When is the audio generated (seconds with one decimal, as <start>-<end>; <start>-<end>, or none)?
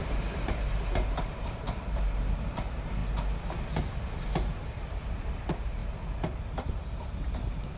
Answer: 0.0-3.0; 3.8-5.8